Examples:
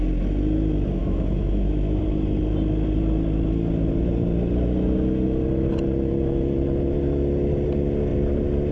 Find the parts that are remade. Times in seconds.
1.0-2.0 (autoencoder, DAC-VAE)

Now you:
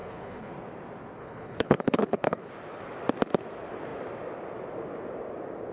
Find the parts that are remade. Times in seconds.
0.0-0.5 (codec, HILCodec); 1.2-2.5

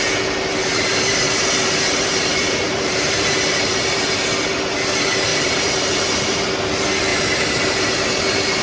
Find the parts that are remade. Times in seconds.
0.6-4.1 (vocoder, BigVGAN v2); 5.3-6.5; 7.1-8.6